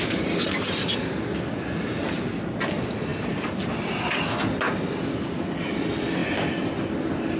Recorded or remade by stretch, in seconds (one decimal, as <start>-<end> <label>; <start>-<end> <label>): 0.0-7.4 recorded